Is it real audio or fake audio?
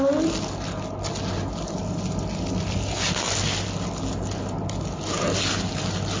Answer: real